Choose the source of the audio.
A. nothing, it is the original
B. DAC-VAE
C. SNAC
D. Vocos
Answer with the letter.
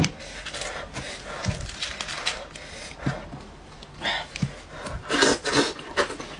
A